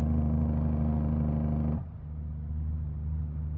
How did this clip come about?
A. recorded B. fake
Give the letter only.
A